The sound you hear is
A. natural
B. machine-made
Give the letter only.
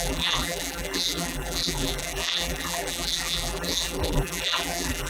B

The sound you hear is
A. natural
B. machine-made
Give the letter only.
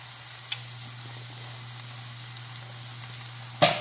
A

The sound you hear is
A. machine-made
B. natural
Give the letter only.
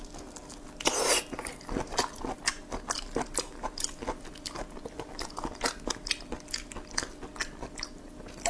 B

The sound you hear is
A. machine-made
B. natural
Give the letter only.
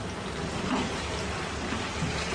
A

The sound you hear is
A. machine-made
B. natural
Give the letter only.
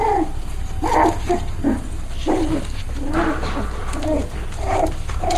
B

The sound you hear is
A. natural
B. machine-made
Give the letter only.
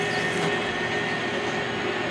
A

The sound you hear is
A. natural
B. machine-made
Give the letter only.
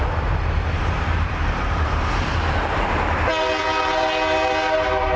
B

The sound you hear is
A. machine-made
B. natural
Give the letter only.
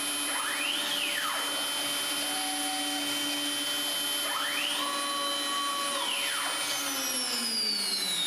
B